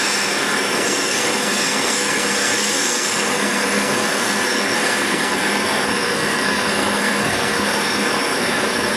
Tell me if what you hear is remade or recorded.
remade